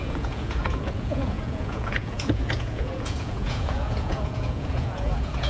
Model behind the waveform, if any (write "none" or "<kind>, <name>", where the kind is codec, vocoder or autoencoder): vocoder, Vocos